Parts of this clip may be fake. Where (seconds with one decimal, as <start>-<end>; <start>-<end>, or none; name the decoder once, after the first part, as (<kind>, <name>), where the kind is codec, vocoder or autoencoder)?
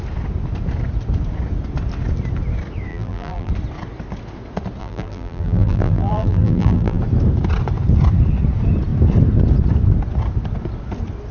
2.9-3.5 (vocoder, BigVGAN v2); 4.8-7.0